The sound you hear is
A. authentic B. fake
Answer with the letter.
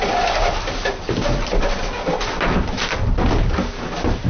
A